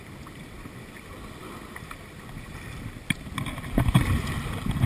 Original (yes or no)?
yes